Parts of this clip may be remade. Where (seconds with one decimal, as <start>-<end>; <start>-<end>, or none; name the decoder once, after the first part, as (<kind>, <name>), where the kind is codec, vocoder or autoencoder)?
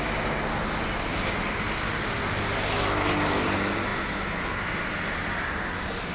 none